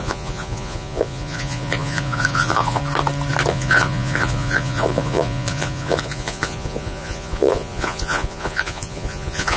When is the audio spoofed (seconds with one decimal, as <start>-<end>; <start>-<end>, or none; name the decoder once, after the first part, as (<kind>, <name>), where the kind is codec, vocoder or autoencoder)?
0.0-2.8 (vocoder, Vocos); 3.5-9.6